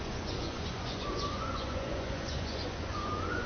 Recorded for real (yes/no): no